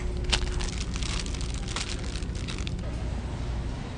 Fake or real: real